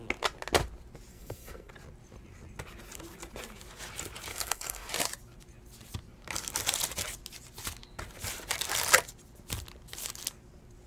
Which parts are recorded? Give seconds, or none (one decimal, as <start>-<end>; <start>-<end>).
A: 0.0-1.1; 1.7-4.3; 4.9-10.9